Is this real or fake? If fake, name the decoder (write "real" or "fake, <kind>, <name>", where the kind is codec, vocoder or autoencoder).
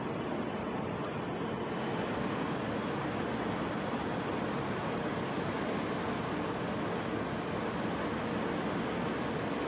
real